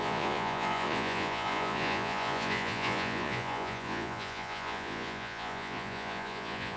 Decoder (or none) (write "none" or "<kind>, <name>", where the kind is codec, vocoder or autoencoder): vocoder, Vocos